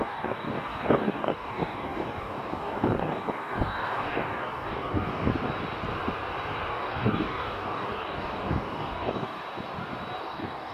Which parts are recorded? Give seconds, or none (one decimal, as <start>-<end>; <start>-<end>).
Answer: 5.3-6.7; 9.4-10.2